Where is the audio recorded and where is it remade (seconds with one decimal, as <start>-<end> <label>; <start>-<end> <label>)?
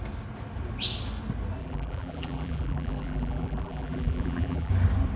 0.0-1.6 recorded; 1.6-4.7 remade; 4.7-5.2 recorded